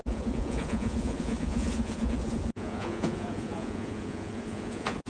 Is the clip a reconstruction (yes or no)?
yes